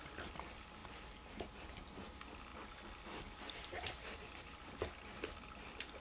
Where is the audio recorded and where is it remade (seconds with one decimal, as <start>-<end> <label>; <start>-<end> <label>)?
0.0-0.8 recorded; 0.8-1.7 remade; 1.7-6.0 recorded